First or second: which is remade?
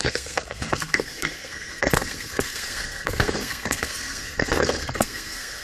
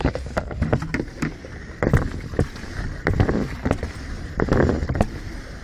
first